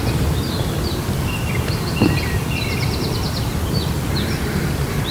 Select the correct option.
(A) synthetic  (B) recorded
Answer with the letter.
A